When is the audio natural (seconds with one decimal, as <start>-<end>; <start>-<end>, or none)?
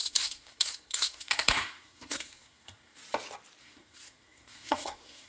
3.0-3.6